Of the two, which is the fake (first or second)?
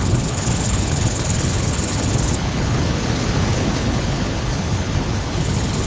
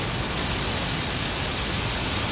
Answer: first